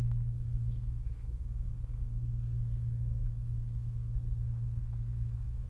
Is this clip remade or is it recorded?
remade